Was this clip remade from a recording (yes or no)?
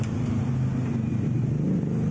no